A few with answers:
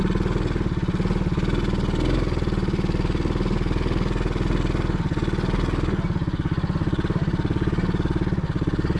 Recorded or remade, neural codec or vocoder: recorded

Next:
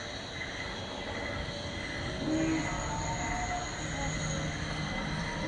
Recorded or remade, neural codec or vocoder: recorded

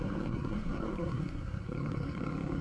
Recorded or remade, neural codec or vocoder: remade, codec, SNAC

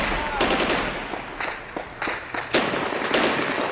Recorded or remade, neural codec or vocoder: recorded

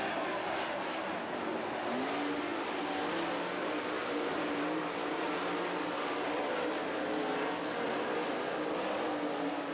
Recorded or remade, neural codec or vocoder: recorded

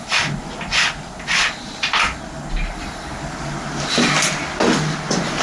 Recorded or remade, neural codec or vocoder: recorded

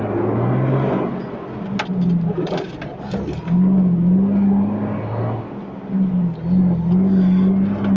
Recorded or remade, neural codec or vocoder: recorded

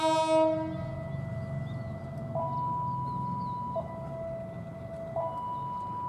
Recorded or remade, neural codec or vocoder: recorded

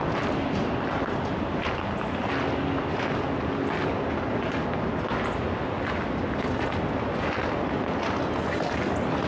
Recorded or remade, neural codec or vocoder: recorded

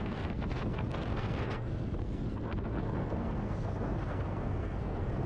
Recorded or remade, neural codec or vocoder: remade, codec, SNAC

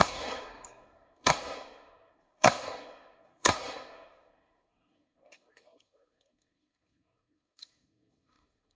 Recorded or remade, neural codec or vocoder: remade, codec, SNAC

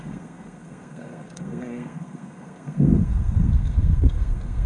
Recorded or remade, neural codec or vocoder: remade, codec, SNAC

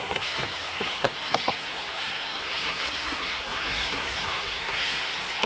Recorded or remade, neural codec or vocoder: remade, codec, SNAC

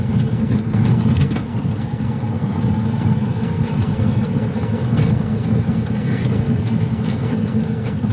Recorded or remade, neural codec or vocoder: remade, codec, SNAC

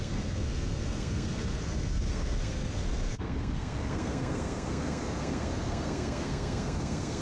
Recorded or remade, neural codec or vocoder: remade, codec, SNAC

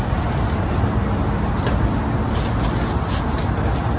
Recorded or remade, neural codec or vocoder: recorded